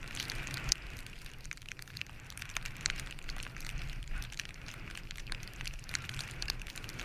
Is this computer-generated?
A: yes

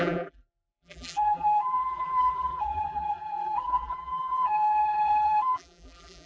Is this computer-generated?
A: yes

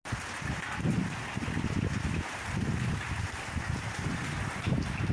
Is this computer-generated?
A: no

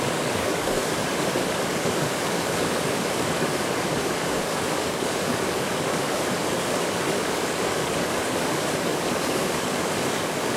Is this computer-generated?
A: yes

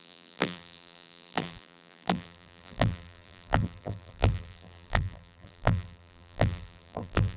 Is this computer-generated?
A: yes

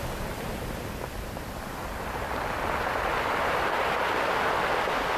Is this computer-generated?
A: no